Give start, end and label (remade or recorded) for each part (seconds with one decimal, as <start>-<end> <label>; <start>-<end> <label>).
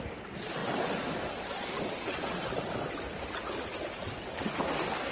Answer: 0.0-5.1 recorded